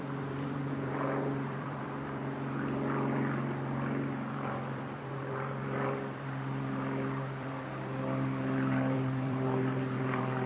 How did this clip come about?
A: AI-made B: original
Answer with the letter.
A